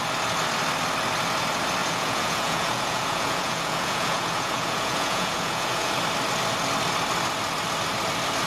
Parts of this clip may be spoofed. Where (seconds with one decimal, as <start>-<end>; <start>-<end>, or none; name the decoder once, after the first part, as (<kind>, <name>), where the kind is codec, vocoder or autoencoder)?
1.8-5.9 (vocoder, Vocos)